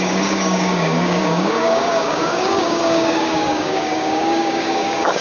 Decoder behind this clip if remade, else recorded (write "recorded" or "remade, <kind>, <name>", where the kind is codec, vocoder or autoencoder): remade, codec, DAC